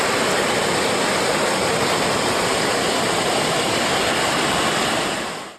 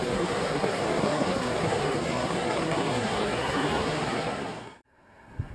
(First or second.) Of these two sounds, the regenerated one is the second